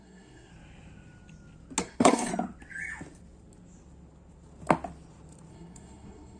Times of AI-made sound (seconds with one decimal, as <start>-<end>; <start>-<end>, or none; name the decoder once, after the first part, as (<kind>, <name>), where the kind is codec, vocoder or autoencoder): 0.0-0.5 (codec, SNAC); 1.8-2.3; 5.5-6.4